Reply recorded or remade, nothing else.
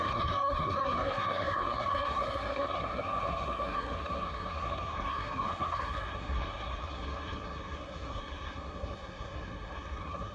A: remade